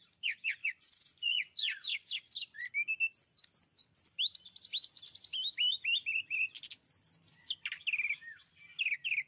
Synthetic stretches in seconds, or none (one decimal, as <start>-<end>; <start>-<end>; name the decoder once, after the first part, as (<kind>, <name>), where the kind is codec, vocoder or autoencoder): 0.6-2.6 (vocoder, Vocos)